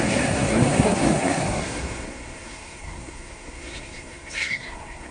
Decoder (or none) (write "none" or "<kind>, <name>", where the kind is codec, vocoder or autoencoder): codec, SNAC